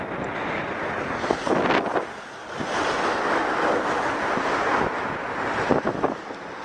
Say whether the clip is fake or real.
real